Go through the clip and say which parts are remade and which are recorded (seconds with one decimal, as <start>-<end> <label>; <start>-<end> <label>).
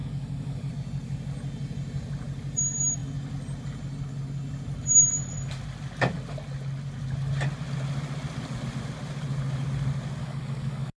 0.0-0.7 remade; 0.7-10.2 recorded; 10.2-11.0 remade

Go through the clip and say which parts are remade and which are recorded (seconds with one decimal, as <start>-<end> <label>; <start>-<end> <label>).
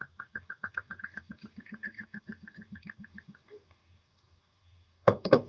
0.0-5.5 remade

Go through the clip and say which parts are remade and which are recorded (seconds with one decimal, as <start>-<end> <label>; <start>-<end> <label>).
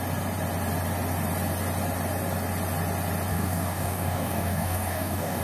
0.0-3.3 recorded; 3.3-5.4 remade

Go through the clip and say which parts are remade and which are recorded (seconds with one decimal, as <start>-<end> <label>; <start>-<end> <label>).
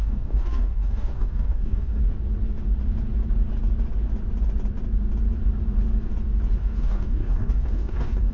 0.0-2.0 remade; 2.0-6.6 recorded; 6.6-8.3 remade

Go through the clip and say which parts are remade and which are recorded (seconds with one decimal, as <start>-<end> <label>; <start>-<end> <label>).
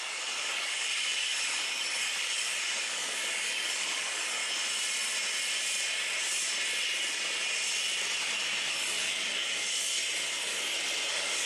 0.0-4.4 remade; 4.4-8.7 recorded; 8.7-10.0 remade; 10.0-11.1 recorded; 11.1-11.5 remade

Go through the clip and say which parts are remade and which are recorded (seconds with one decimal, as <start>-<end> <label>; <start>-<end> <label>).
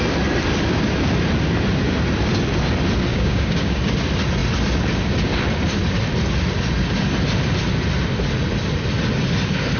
0.0-3.1 recorded; 3.1-3.8 remade; 3.8-9.8 recorded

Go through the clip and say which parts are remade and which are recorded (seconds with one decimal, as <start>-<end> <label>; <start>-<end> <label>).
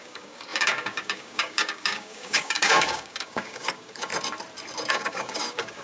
0.0-4.1 remade; 4.1-4.9 recorded; 4.9-5.8 remade